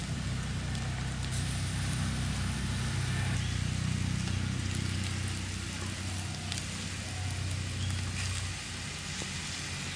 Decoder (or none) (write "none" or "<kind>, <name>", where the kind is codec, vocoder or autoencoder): none